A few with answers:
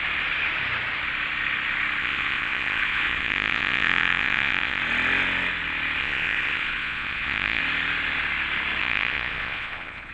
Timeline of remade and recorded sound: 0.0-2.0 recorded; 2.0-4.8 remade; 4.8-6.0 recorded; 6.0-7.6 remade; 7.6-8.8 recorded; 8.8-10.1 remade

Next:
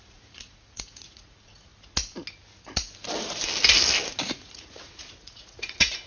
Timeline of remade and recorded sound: 0.0-1.7 remade; 1.7-4.3 recorded; 4.3-6.1 remade